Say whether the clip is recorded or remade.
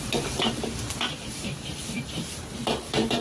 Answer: remade